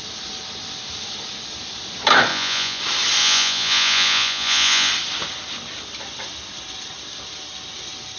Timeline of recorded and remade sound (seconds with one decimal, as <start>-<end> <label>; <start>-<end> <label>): 0.0-2.3 recorded; 2.3-2.8 remade; 2.8-3.2 recorded; 3.2-4.9 remade; 4.9-8.2 recorded